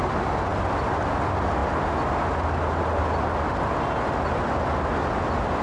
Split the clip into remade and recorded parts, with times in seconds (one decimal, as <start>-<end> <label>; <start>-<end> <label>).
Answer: 0.0-5.6 recorded